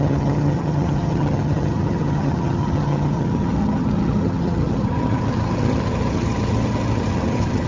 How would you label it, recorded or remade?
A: remade